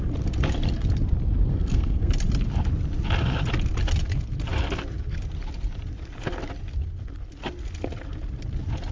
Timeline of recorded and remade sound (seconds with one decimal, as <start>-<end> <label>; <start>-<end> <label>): 0.0-1.5 recorded; 1.5-2.1 remade; 2.1-8.9 recorded